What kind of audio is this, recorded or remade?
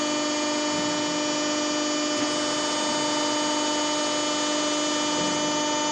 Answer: recorded